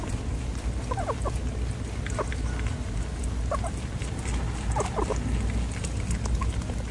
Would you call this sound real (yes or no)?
yes